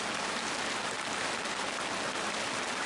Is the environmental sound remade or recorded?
recorded